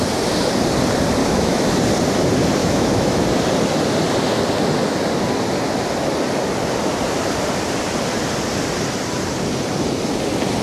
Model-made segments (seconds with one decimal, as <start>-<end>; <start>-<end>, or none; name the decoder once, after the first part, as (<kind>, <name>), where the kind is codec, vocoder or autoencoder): 1.2-1.8 (autoencoder, DAC-VAE); 2.6-3.2